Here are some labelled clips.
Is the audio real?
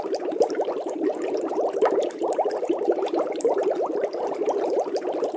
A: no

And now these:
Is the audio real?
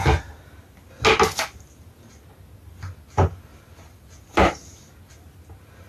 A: yes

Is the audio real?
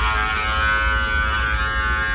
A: yes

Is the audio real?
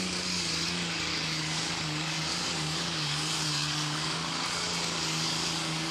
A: no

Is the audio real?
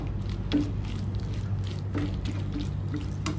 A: yes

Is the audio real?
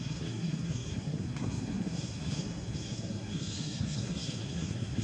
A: no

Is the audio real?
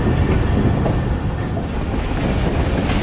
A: yes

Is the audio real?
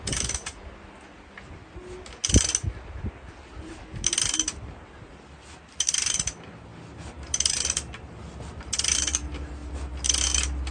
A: yes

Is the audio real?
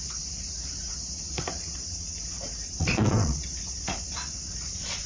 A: no